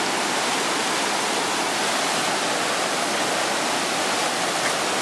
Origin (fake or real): real